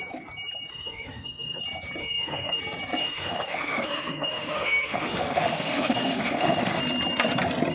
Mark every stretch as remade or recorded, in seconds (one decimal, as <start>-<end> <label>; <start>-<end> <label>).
0.0-0.7 recorded; 0.7-1.6 remade; 1.6-2.0 recorded; 2.0-2.6 remade; 2.6-3.0 recorded; 3.0-6.8 remade; 6.8-7.7 recorded